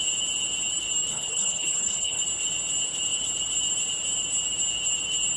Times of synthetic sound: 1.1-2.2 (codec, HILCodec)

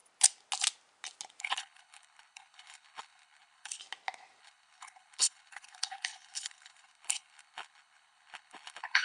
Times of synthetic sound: 1.4-3.8 (codec, HILCodec); 4.4-9.0